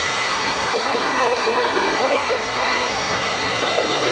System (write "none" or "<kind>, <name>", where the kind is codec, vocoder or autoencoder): codec, SNAC